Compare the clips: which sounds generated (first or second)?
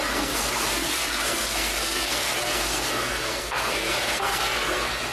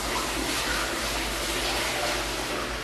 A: first